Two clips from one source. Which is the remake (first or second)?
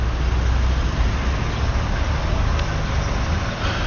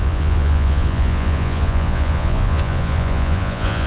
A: second